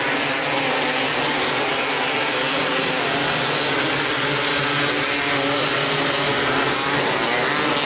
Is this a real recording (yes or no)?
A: yes